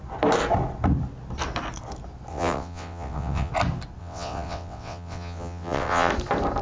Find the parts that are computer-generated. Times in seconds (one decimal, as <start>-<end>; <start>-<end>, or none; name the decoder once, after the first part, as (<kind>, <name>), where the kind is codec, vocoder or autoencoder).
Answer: 2.3-3.5 (vocoder, WaveNeXt); 4.0-6.1